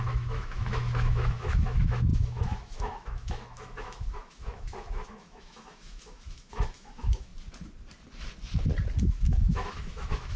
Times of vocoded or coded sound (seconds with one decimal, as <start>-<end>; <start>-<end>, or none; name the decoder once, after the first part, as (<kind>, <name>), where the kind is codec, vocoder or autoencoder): 0.0-7.3 (autoencoder, DAC-VAE); 9.0-10.4